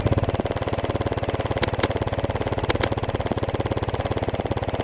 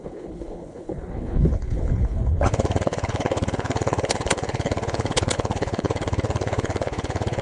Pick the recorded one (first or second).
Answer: first